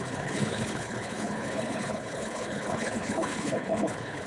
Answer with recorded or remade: remade